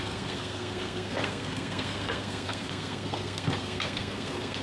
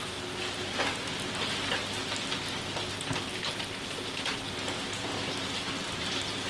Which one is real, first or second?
second